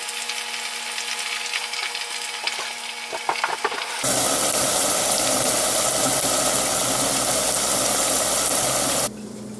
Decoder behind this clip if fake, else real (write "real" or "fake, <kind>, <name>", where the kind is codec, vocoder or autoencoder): real